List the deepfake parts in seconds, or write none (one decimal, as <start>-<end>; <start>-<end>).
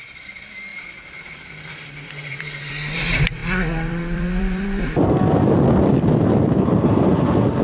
0.7-2.7; 3.4-7.6